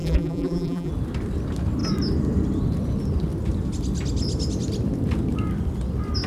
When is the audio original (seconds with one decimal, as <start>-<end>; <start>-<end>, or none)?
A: 0.9-6.3